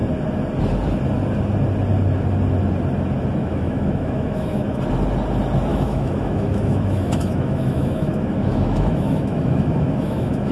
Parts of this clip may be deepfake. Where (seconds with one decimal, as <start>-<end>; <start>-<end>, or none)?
3.4-4.8; 5.7-10.5